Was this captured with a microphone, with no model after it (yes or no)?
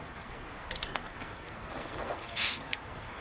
no